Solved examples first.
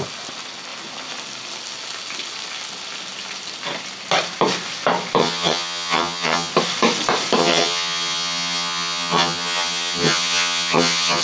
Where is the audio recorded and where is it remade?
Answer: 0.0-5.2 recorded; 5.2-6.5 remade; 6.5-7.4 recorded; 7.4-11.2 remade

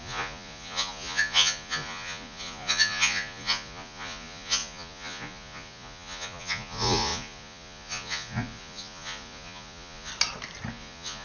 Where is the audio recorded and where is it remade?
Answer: 0.0-10.1 remade; 10.1-10.7 recorded; 10.7-11.2 remade

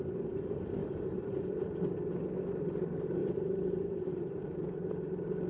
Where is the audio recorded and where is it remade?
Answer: 0.0-0.8 recorded; 0.8-1.4 remade; 1.4-3.2 recorded; 3.2-4.4 remade; 4.4-5.5 recorded